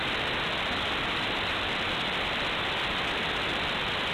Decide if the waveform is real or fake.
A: real